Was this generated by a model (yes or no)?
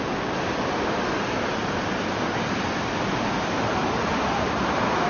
no